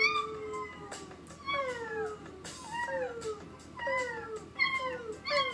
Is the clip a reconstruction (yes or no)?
no